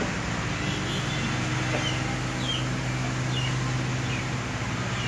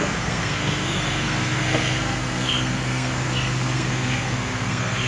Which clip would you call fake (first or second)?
second